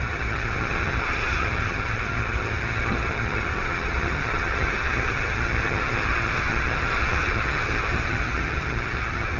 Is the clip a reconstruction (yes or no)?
yes